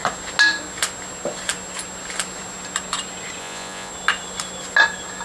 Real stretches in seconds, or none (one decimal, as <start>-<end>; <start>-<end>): 0.0-3.4; 3.9-5.2